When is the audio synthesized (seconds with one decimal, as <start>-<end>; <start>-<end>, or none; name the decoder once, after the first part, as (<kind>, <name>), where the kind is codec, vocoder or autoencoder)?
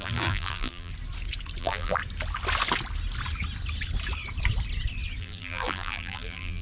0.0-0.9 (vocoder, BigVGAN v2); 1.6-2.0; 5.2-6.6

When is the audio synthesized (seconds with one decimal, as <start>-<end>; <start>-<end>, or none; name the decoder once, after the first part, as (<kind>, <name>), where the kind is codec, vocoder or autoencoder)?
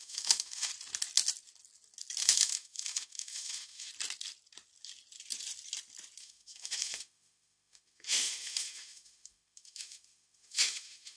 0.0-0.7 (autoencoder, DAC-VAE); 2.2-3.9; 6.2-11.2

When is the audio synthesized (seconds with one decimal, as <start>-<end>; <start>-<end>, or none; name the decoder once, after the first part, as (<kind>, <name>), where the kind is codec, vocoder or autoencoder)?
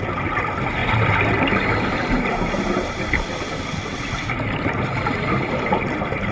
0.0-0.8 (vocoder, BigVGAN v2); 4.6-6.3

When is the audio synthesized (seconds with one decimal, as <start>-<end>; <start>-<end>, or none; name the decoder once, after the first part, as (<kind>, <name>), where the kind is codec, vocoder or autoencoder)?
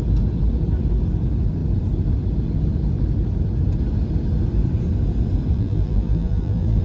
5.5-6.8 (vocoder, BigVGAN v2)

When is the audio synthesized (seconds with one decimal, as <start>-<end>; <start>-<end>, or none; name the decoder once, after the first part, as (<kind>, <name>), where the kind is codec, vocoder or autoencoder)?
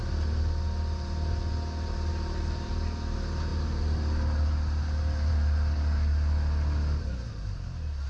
none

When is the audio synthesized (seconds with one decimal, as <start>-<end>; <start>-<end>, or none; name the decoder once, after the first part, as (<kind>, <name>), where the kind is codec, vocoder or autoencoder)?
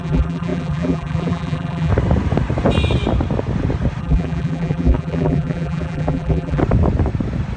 0.0-1.9 (vocoder, BigVGAN v2); 4.0-6.6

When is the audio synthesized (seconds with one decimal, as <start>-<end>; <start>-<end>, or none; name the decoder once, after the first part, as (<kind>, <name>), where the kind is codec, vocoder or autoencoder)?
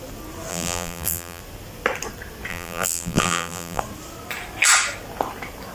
0.5-1.4 (vocoder, BigVGAN v2); 2.5-3.8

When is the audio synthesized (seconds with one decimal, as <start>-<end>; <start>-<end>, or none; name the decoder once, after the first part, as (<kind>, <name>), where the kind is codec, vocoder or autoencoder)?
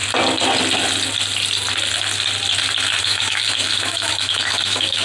3.0-5.0 (autoencoder, DAC-VAE)